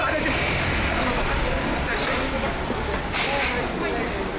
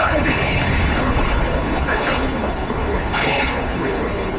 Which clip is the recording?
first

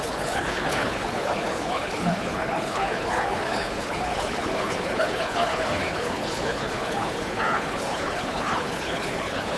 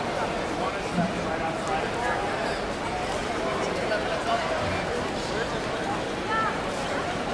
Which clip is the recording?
second